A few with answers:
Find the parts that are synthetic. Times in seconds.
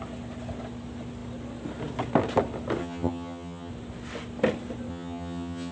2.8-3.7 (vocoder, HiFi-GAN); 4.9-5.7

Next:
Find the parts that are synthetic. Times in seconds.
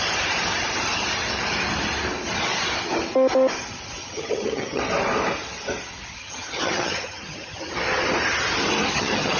4.0-4.8 (vocoder, HiFi-GAN); 6.2-7.7; 8.8-9.4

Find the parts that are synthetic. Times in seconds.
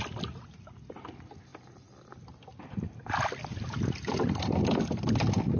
none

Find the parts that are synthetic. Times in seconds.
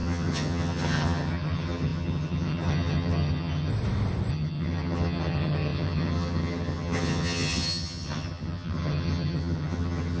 0.0-3.7 (vocoder, HiFi-GAN); 4.3-10.2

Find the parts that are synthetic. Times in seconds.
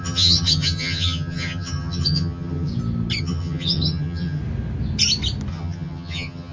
0.0-2.7 (vocoder, HiFi-GAN); 3.2-4.4; 5.5-6.5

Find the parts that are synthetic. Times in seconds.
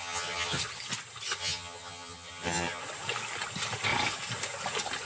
0.0-0.6 (vocoder, HiFi-GAN); 1.4-2.8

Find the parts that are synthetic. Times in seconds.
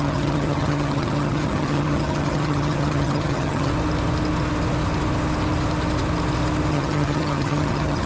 0.0-3.7 (vocoder, HiFi-GAN); 6.7-8.1